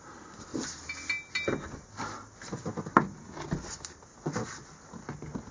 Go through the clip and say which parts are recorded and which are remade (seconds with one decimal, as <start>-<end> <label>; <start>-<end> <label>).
0.0-5.5 recorded